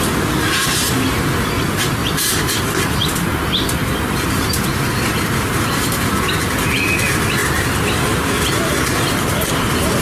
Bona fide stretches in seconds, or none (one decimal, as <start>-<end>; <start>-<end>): 0.0-2.0; 2.6-3.8; 6.3-7.4